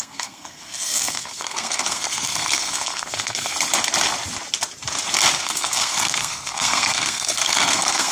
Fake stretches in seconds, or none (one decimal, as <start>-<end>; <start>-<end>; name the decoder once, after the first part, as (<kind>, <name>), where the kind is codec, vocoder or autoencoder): 0.0-3.5 (codec, SNAC); 5.4-8.1